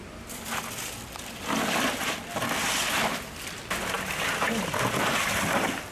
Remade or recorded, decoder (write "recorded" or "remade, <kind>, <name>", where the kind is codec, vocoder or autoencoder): recorded